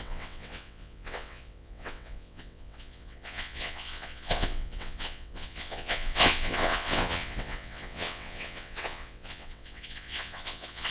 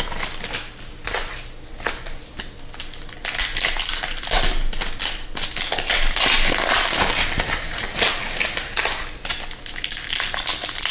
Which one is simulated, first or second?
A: first